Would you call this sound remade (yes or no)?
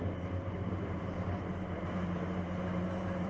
yes